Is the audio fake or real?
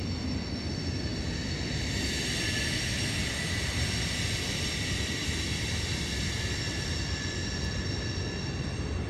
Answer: real